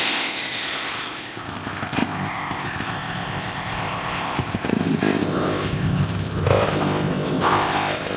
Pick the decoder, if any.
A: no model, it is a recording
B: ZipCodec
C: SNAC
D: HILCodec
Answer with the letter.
B